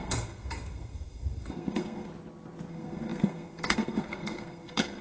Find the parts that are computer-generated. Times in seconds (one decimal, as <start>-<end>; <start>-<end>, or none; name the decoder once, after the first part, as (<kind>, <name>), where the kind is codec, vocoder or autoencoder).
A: 0.0-2.1 (codec, SNAC); 2.7-5.0